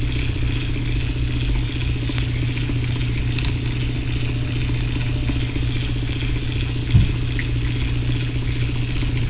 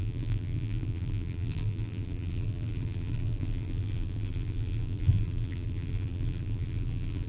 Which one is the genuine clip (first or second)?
first